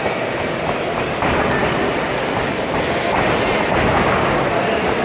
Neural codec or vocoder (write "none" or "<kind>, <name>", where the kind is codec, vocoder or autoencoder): none